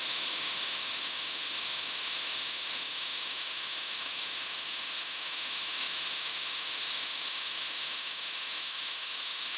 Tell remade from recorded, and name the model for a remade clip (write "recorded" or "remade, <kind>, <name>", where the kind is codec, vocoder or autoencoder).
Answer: remade, autoencoder, DAC-VAE